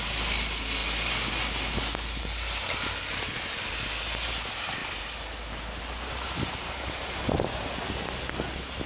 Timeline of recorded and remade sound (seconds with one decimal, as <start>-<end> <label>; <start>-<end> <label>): 0.0-8.9 recorded

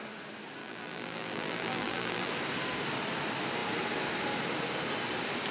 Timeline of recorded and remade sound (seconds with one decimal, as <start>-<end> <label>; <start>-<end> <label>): 0.0-0.6 recorded; 0.6-2.3 remade; 2.3-5.5 recorded

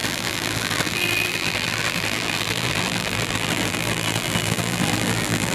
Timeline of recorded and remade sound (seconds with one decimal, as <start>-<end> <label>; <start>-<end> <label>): 0.0-5.5 remade